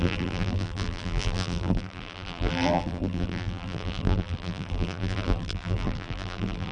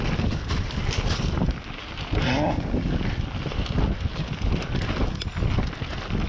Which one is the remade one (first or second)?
first